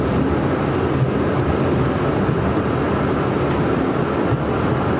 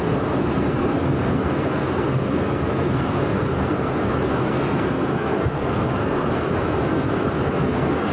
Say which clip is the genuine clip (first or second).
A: first